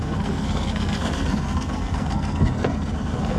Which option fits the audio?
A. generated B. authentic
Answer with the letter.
A